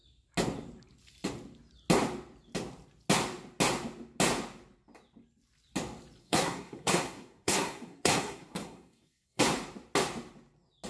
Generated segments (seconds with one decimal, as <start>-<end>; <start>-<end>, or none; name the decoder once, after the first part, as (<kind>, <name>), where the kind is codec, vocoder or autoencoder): 6.2-9.4 (codec, SNAC)